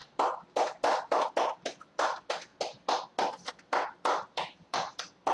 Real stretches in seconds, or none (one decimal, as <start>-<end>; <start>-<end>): 2.5-3.5